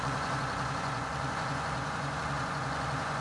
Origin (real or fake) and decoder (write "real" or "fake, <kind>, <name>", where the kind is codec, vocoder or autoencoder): fake, vocoder, Vocos